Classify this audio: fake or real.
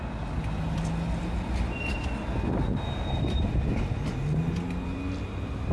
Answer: real